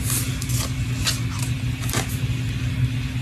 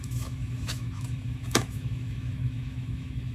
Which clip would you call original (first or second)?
first